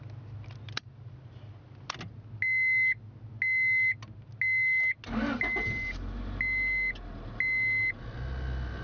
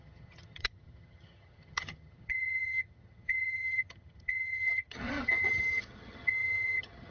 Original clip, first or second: first